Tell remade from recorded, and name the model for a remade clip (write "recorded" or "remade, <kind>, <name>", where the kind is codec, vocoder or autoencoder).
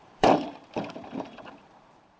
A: remade, vocoder, BigVGAN v2